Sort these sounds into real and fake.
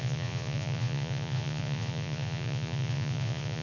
fake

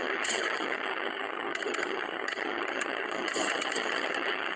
fake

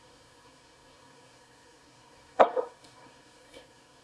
fake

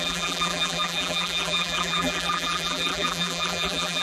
fake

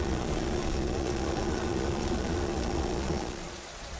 fake